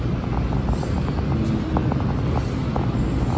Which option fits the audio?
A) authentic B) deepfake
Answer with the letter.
A